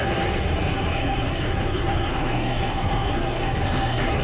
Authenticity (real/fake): fake